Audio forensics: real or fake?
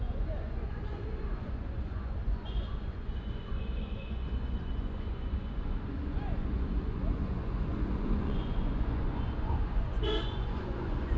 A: fake